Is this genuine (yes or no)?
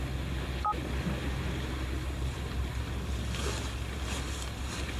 yes